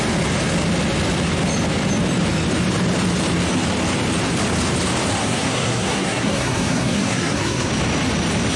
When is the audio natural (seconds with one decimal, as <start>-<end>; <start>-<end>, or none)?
0.0-5.2; 7.7-8.6